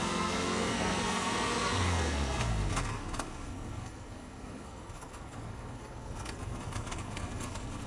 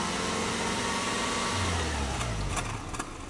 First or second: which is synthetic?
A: first